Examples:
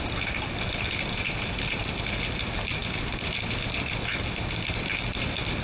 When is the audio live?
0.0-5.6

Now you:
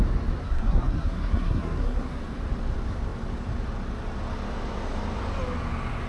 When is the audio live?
0.0-0.4; 2.2-6.1

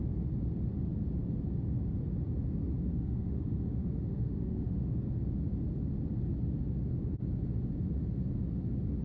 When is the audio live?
0.0-2.9; 4.9-9.0

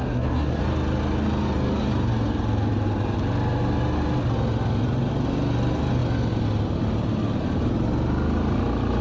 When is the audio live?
0.6-9.0

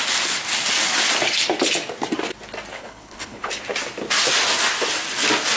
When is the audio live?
0.0-2.7; 3.5-5.6

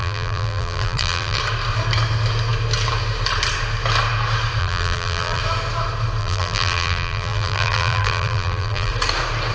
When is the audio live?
1.4-4.6; 5.4-6.2; 8.9-9.5